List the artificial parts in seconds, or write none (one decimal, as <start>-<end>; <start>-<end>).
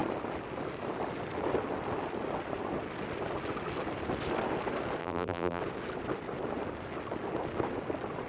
5.0-5.6